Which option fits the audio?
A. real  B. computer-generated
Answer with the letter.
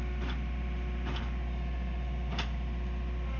A